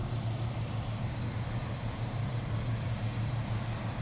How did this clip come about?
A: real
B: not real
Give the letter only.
B